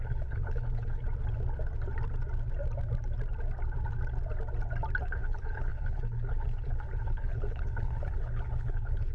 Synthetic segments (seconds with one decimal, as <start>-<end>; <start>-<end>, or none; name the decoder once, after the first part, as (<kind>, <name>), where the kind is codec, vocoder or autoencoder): 0.0-1.0 (codec, HILCodec); 5.1-9.1